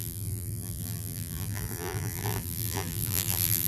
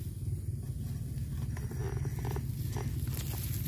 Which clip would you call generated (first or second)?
first